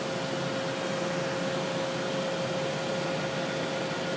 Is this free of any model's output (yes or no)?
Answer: yes